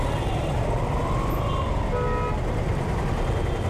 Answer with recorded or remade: recorded